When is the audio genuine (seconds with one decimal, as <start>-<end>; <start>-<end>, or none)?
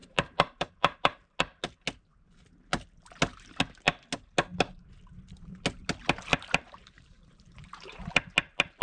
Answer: 1.4-6.3; 8.1-8.8